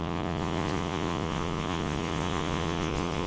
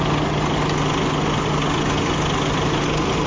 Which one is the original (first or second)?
second